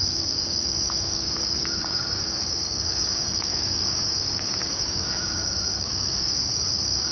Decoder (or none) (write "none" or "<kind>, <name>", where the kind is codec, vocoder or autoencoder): codec, DAC